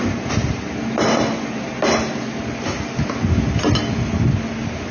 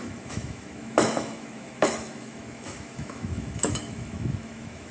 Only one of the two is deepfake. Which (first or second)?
second